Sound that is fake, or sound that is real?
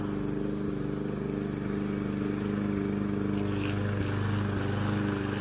real